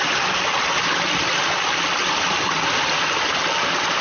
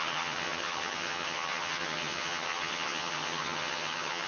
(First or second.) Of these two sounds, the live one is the first